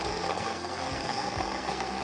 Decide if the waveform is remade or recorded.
remade